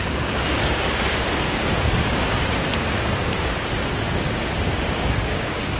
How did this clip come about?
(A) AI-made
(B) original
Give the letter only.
A